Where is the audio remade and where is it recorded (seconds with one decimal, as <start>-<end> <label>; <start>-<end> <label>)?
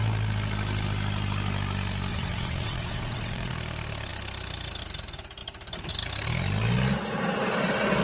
0.0-2.1 recorded; 2.1-3.5 remade; 3.5-8.0 recorded